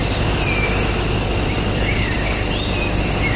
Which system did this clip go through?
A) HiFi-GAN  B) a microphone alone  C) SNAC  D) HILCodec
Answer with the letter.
B